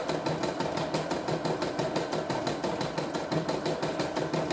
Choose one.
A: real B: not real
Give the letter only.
A